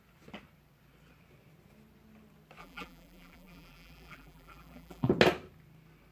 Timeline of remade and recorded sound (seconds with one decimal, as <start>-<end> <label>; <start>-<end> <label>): 0.0-2.6 recorded; 2.6-5.1 remade; 5.1-6.1 recorded